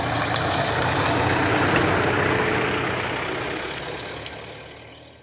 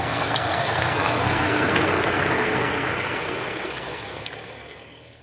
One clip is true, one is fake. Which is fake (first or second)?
second